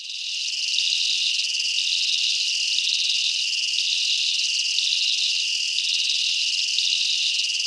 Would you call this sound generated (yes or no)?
no